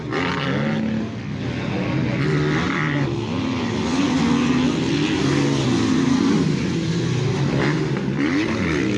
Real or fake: real